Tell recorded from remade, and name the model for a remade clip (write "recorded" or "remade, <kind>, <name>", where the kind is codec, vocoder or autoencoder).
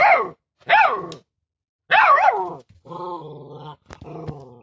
recorded